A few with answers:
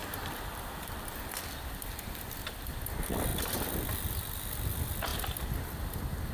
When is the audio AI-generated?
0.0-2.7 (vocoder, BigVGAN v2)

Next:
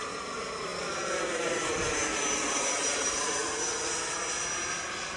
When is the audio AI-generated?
none

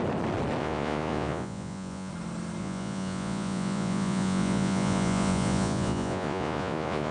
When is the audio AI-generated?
0.6-2.1 (vocoder, Vocos); 2.6-7.1

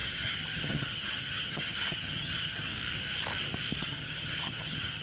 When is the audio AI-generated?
0.0-2.7 (vocoder, HiFi-GAN); 3.8-5.0